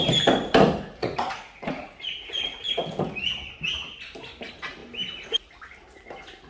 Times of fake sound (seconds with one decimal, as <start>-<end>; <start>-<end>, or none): 1.0-3.1

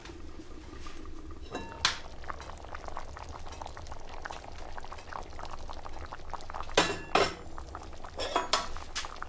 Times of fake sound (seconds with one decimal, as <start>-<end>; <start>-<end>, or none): none

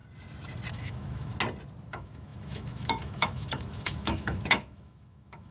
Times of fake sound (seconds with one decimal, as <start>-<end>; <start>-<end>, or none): 0.7-1.3; 1.9-5.5

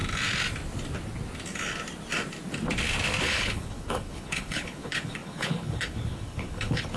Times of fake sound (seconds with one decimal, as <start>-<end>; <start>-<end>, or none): 3.2-7.0